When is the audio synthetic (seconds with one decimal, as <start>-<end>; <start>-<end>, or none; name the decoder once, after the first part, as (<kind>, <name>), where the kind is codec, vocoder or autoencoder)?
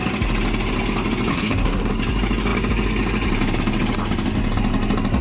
1.3-1.9 (codec, SNAC)